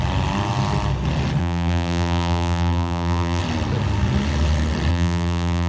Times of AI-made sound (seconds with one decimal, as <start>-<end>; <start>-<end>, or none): 1.4-3.4; 4.9-5.7